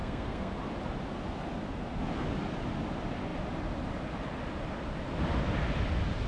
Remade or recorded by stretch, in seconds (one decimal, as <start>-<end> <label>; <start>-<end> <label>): 0.0-0.6 remade; 0.6-6.3 recorded